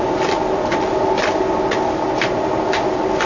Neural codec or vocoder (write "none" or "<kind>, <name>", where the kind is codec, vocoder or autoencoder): none